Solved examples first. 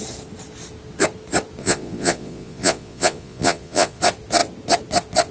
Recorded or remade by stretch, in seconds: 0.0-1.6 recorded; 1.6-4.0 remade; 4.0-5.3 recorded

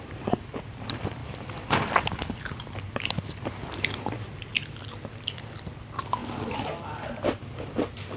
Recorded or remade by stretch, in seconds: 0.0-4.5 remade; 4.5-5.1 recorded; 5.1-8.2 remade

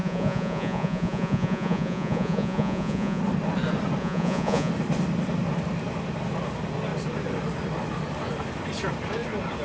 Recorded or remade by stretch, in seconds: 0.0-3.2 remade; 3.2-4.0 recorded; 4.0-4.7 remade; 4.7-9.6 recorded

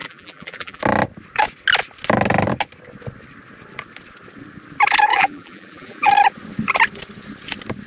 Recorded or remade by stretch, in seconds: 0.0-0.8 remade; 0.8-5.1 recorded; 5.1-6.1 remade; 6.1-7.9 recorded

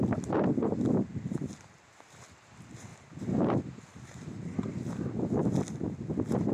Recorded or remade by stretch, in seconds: 0.0-2.9 recorded; 2.9-3.6 remade; 3.6-6.5 recorded

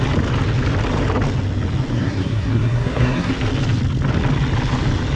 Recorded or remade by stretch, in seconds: 0.0-1.9 recorded; 1.9-3.3 remade; 3.3-5.2 recorded